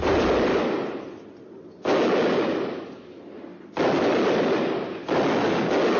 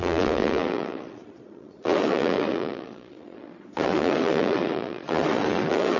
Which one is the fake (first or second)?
second